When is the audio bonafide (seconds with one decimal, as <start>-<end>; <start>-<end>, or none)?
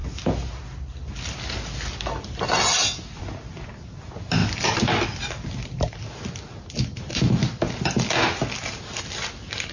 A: 0.0-9.7